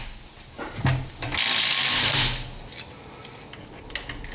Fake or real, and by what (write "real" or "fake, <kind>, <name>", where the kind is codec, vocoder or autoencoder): real